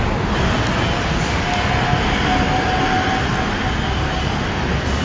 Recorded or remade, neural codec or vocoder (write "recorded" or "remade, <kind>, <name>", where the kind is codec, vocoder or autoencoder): recorded